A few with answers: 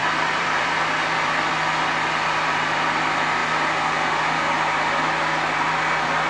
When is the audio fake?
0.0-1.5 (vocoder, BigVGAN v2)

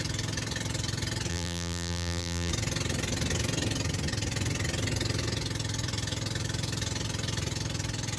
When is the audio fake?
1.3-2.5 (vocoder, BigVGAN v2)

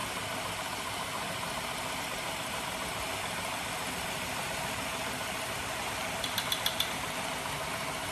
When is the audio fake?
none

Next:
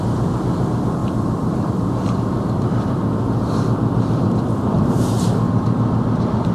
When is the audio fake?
1.0-4.9 (vocoder, BigVGAN v2)